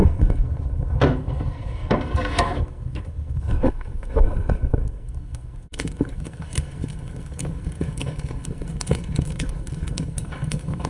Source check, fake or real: fake